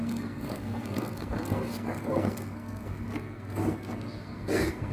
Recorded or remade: remade